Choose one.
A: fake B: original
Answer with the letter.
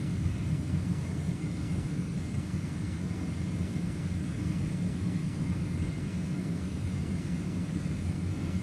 A